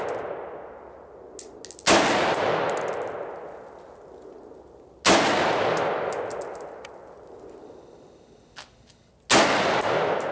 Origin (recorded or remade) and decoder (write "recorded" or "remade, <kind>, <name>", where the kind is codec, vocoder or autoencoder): recorded